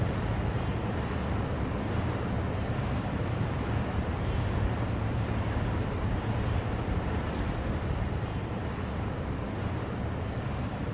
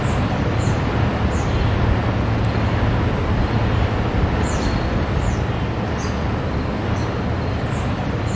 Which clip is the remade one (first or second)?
first